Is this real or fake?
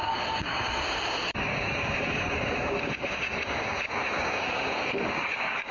fake